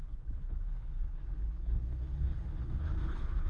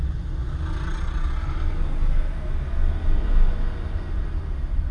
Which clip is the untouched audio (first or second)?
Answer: second